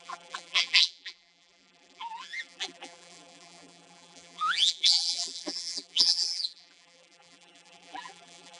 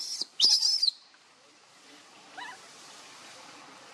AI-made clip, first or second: first